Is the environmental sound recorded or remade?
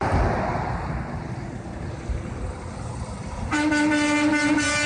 recorded